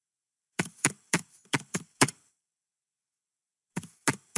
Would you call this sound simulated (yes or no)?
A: no